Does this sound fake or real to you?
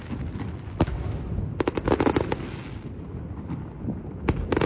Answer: real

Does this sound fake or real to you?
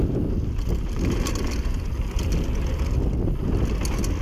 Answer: real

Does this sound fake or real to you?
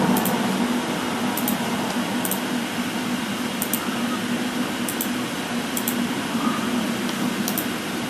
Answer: real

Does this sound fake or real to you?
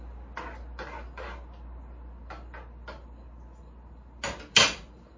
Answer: real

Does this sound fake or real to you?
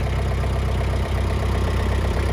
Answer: fake